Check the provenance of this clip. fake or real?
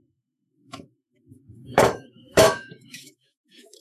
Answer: fake